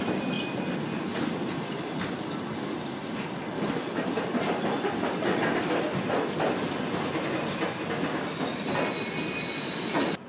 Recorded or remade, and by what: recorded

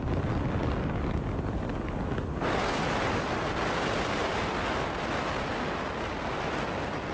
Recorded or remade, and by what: recorded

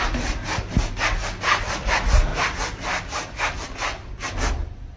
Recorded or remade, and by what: recorded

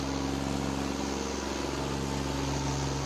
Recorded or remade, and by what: recorded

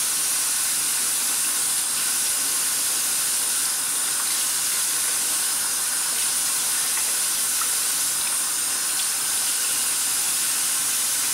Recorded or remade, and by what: recorded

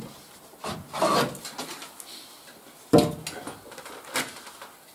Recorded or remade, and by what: recorded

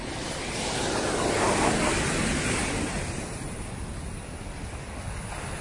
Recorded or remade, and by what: recorded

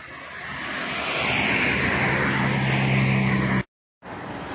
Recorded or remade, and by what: recorded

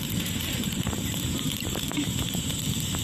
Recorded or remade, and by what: remade, vocoder, BigVGAN v2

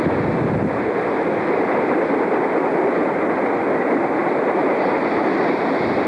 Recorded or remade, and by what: recorded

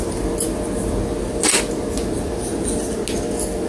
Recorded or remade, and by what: recorded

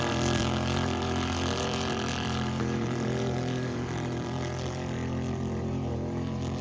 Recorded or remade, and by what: remade, vocoder, BigVGAN v2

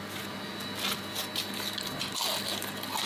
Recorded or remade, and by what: recorded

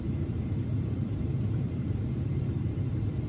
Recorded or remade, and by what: remade, vocoder, BigVGAN v2